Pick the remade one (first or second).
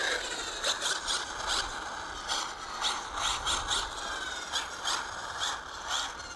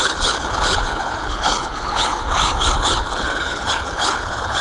second